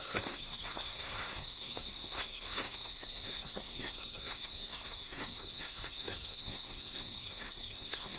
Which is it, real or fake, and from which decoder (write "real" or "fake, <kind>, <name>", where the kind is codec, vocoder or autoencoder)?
fake, codec, SNAC